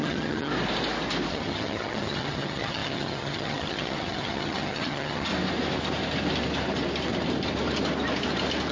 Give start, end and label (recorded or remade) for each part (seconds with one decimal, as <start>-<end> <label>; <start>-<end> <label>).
0.0-0.5 remade; 0.5-1.3 recorded; 1.3-5.3 remade; 5.3-8.7 recorded